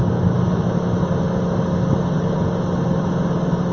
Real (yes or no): yes